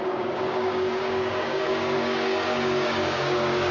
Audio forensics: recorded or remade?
remade